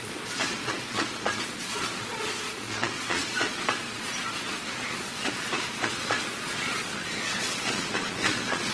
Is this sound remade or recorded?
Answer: remade